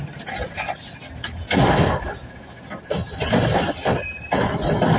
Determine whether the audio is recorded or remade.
recorded